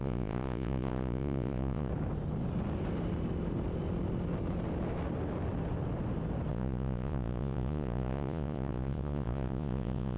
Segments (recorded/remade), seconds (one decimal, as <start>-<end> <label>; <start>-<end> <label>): 0.0-1.9 remade; 1.9-6.5 recorded; 6.5-10.2 remade